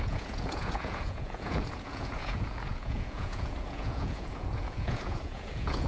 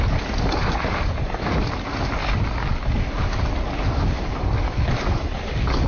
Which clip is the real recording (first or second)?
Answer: second